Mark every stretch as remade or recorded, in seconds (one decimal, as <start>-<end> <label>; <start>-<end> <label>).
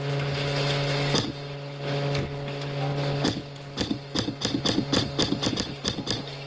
0.0-6.5 recorded